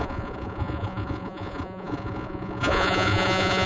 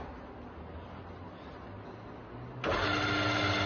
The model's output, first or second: first